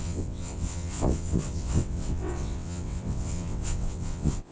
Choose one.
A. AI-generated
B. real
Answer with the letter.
A